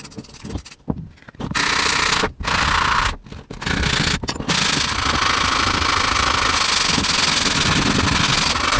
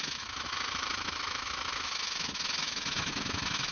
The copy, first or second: second